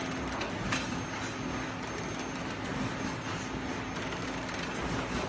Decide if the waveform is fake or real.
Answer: real